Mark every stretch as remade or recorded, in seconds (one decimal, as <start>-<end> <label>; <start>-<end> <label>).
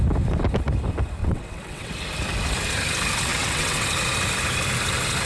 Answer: 0.0-1.2 recorded; 1.2-1.9 remade; 1.9-3.3 recorded; 3.3-3.9 remade; 3.9-5.3 recorded